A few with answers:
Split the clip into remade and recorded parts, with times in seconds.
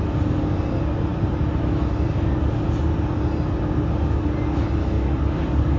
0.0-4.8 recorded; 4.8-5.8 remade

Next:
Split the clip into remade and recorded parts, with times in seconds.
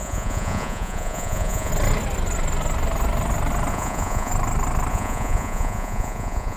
0.0-1.7 remade; 1.7-3.7 recorded; 3.7-4.3 remade; 4.3-4.9 recorded; 4.9-6.6 remade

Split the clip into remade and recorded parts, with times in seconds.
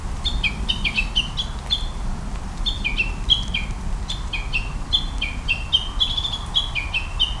0.0-7.4 recorded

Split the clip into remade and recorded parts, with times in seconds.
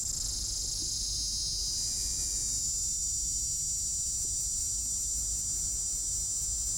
0.0-6.8 recorded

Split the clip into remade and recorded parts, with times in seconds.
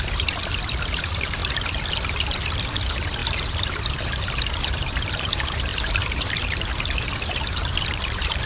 0.0-1.4 remade; 1.4-2.6 recorded; 2.6-8.5 remade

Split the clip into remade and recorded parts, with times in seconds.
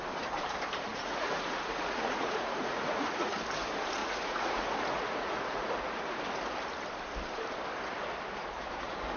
0.0-0.9 recorded; 0.9-3.3 remade; 3.3-4.0 recorded; 4.0-6.2 remade; 6.2-9.2 recorded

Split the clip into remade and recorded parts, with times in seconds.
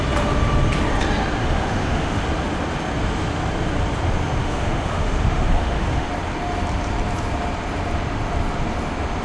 0.0-1.4 recorded; 1.4-2.2 remade; 2.2-4.4 recorded; 4.4-6.1 remade; 6.1-9.2 recorded